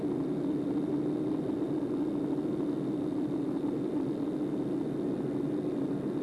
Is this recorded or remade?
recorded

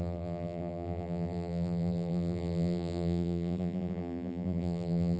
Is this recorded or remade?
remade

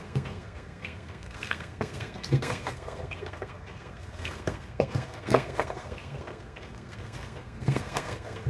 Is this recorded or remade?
remade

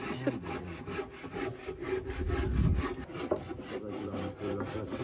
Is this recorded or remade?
recorded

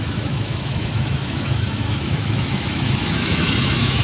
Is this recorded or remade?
remade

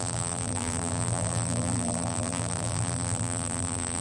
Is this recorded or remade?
remade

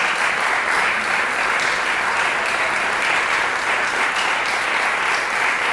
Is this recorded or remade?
recorded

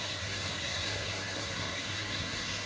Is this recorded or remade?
remade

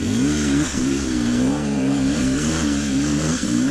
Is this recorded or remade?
remade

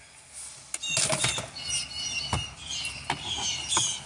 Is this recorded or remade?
recorded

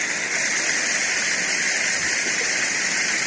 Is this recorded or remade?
recorded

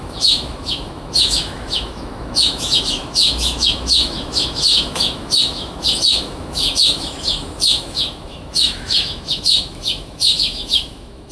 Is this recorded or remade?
remade